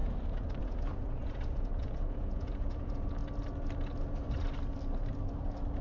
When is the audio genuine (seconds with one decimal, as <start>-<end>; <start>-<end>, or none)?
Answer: 0.0-0.6; 3.2-5.8